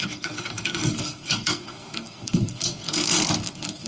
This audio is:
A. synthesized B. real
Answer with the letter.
A